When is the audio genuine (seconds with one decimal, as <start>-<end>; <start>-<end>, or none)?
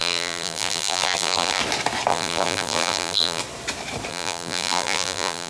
1.6-2.1; 3.4-4.1